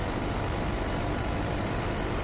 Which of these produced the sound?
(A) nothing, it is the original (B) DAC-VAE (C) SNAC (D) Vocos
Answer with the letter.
A